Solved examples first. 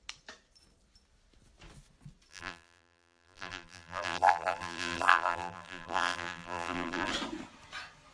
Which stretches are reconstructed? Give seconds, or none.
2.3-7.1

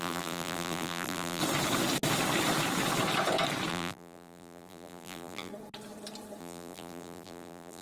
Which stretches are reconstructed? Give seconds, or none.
0.0-1.4; 3.7-5.5; 6.4-7.8

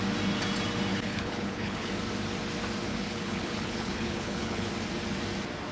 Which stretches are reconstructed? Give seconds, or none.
0.9-1.9; 2.9-4.7